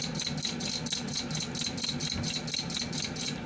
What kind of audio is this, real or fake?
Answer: real